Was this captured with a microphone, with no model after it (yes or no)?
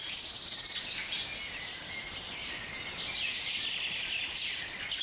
yes